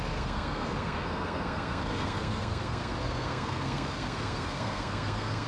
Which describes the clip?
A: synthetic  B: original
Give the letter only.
A